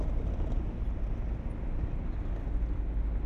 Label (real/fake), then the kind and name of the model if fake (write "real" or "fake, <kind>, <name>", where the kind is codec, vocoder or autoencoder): real